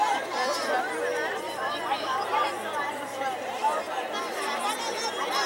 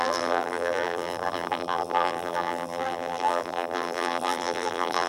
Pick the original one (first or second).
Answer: first